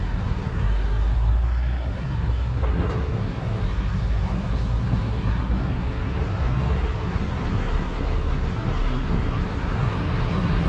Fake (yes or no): yes